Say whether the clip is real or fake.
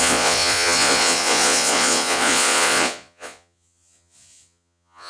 fake